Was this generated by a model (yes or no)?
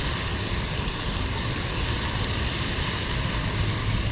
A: no